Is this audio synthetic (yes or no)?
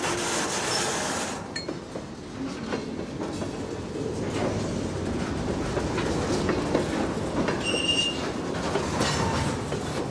no